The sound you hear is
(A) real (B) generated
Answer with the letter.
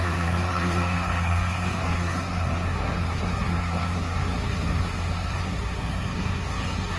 B